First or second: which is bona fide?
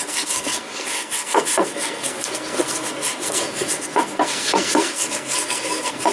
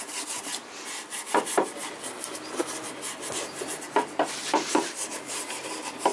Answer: second